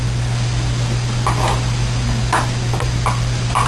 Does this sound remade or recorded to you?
recorded